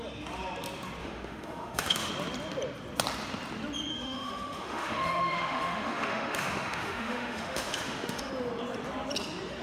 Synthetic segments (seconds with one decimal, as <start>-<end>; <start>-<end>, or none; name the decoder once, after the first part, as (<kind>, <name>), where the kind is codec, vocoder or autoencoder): 1.0-2.1 (autoencoder, DAC-VAE); 3.9-8.3